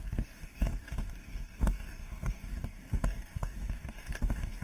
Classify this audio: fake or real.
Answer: fake